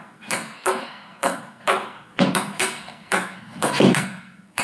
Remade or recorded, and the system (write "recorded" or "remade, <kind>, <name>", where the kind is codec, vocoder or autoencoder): remade, codec, SNAC